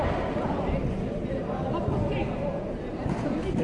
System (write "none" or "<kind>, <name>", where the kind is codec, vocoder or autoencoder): none